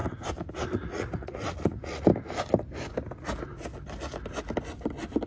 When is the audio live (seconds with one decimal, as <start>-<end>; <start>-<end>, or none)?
0.0-0.5; 2.1-5.3

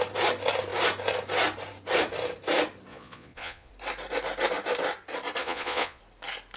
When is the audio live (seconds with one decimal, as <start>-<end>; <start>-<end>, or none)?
0.0-2.9; 3.7-5.4; 6.0-6.6

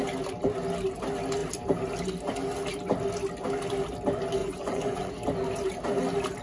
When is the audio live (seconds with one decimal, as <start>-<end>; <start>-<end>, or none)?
0.0-4.4; 5.1-6.4

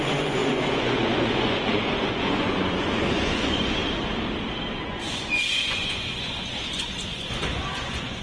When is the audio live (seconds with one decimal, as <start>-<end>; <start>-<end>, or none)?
3.8-4.8

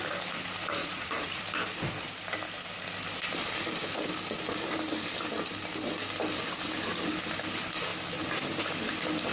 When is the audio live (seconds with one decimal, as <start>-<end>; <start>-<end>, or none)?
0.0-0.8; 1.4-9.3

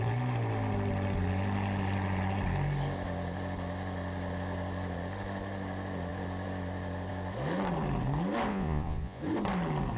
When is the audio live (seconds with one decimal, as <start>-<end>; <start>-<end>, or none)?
0.0-8.5; 9.2-10.0